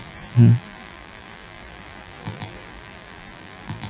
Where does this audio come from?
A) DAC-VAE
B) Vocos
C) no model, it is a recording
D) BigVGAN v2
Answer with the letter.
D